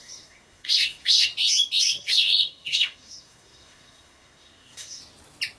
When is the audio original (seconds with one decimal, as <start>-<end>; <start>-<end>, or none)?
1.3-1.8; 5.0-5.6